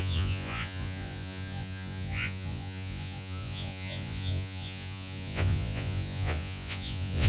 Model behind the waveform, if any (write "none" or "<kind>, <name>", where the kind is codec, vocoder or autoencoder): vocoder, Vocos